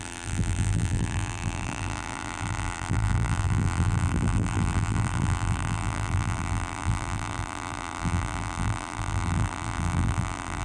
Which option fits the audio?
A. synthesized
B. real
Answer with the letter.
A